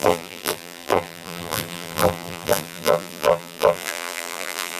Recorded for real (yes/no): no